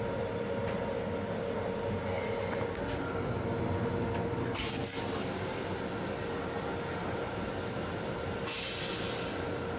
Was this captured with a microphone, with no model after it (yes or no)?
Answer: yes